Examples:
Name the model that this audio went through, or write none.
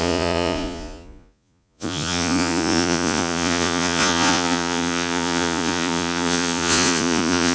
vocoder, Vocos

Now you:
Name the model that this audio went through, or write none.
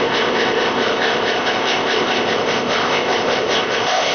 codec, ZipCodec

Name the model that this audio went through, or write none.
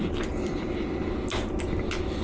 none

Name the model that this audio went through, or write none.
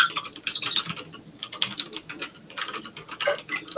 none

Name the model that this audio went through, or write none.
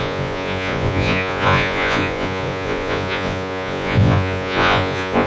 vocoder, Vocos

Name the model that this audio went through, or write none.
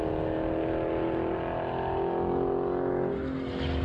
none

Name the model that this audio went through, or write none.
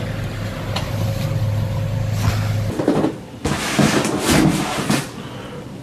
none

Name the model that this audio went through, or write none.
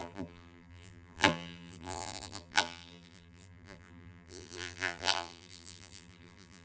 vocoder, BigVGAN v2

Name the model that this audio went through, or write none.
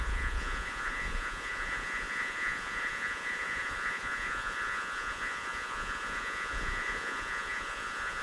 vocoder, Vocos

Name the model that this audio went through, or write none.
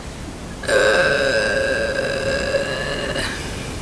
none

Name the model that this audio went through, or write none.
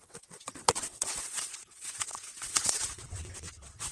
vocoder, WaveNeXt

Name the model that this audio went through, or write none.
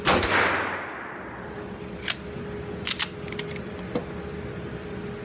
none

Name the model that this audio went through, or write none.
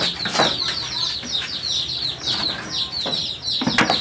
none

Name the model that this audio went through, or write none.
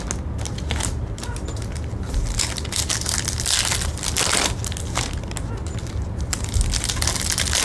none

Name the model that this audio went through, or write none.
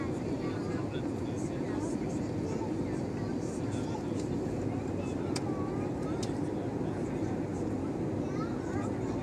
none